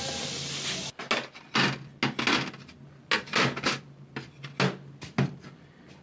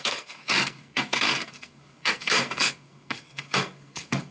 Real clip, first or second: first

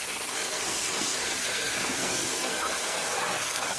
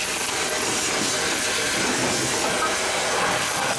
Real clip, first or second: second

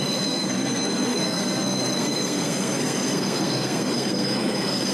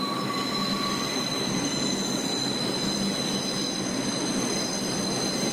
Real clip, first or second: second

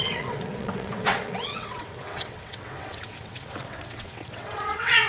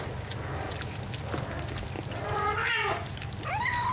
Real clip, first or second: second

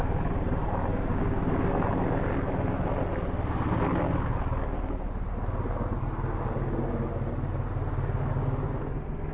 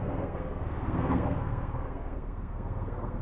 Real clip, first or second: first